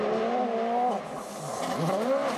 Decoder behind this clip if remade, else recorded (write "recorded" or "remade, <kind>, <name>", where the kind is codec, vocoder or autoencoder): recorded